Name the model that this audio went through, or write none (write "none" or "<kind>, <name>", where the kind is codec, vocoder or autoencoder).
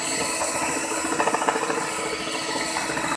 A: none